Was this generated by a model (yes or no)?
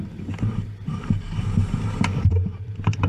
yes